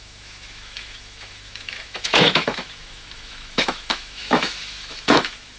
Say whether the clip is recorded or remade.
remade